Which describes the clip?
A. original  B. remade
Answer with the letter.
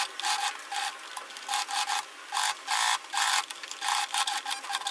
A